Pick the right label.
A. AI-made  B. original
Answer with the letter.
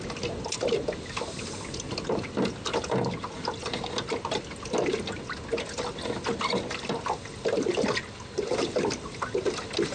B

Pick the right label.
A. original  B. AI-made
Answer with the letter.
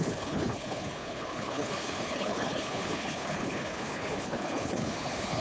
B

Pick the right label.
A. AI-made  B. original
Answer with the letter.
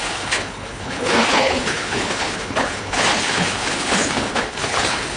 A